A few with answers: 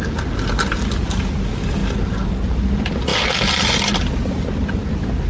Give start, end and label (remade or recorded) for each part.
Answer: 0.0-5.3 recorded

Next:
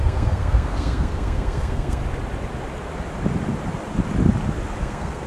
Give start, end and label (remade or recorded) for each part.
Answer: 0.0-2.0 remade; 2.0-4.8 recorded; 4.8-5.3 remade

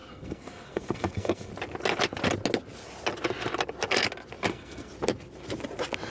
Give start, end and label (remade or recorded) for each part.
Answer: 0.0-1.5 remade; 1.5-4.5 recorded; 4.5-4.9 remade; 4.9-6.1 recorded

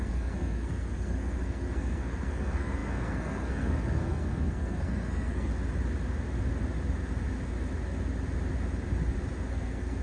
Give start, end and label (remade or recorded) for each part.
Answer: 0.0-5.5 remade; 5.5-9.5 recorded; 9.5-10.0 remade

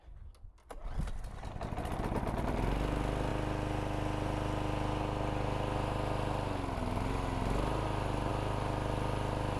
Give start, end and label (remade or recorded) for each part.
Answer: 0.0-9.6 recorded

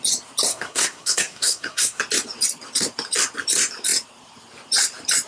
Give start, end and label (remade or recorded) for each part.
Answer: 0.0-0.5 recorded; 0.5-2.0 remade; 2.0-5.3 recorded